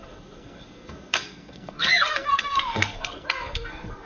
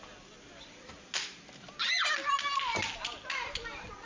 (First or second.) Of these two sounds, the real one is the second